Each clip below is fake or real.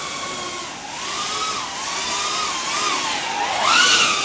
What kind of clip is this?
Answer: real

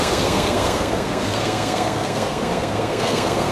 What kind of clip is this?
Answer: fake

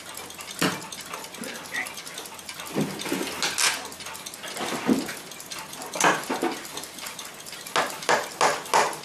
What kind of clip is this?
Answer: real